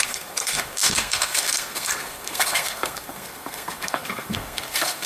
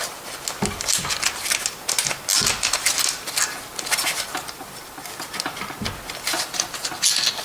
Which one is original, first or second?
second